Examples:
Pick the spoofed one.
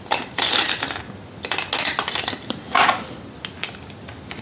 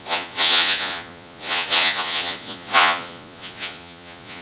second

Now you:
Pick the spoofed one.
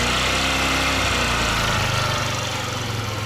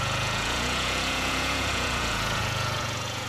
second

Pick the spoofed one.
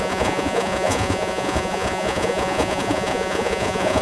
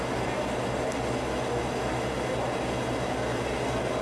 first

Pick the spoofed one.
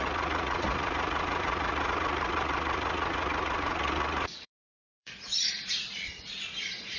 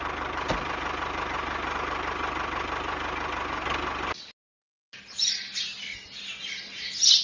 first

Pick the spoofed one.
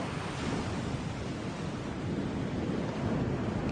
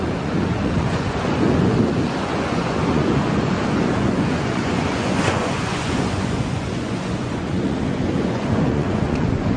second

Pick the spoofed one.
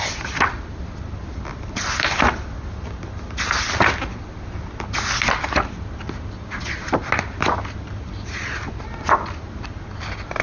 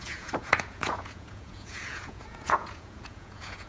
second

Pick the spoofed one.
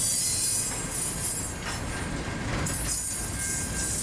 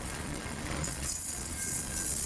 second